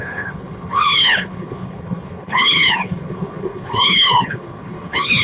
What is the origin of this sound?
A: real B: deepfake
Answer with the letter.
B